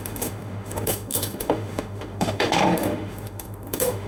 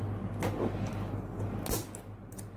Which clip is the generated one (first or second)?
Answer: first